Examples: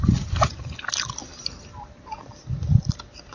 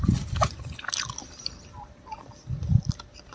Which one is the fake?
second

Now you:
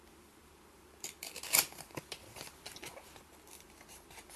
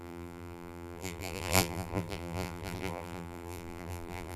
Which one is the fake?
second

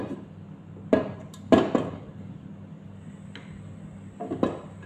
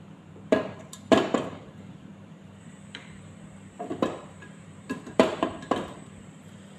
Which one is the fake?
second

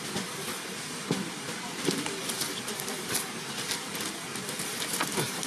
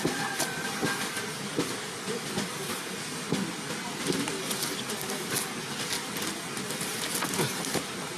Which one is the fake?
first